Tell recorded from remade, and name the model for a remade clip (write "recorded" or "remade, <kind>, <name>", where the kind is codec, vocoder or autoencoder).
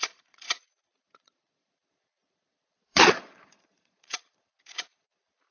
remade, vocoder, Vocos